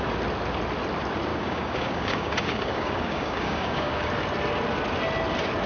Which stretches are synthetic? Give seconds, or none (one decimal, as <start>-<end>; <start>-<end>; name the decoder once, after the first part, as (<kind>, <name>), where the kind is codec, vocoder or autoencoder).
1.3-4.1 (codec, DAC)